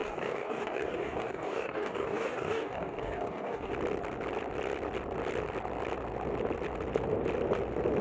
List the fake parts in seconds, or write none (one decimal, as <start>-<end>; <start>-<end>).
0.0-3.7